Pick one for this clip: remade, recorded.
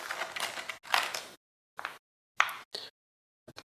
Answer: recorded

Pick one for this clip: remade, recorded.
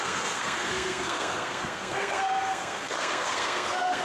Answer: remade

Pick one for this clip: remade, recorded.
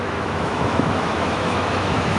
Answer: remade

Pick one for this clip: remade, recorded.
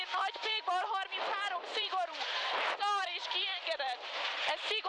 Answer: remade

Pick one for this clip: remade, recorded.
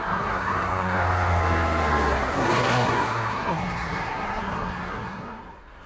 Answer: remade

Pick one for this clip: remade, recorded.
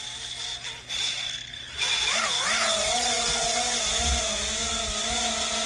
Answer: recorded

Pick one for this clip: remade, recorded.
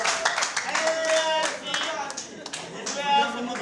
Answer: recorded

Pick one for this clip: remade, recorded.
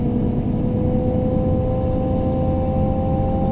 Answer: recorded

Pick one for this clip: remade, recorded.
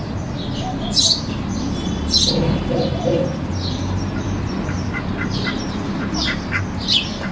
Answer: recorded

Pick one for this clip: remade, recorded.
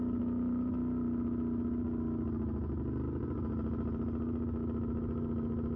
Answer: recorded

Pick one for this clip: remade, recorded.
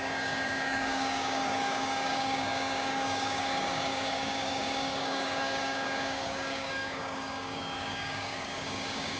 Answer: remade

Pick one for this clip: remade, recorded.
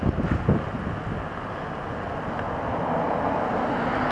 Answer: recorded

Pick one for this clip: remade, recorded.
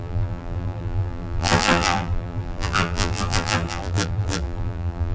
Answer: remade